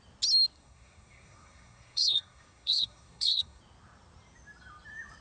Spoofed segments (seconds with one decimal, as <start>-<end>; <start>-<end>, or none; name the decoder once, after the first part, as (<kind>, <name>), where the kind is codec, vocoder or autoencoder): 0.5-3.6 (codec, SNAC)